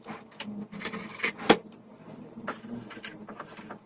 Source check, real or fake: fake